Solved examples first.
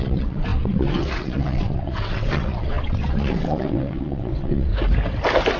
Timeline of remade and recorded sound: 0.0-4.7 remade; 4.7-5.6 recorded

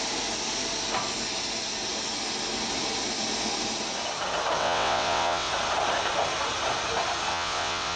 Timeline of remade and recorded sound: 0.0-4.6 recorded; 4.6-5.5 remade; 5.5-7.3 recorded; 7.3-8.0 remade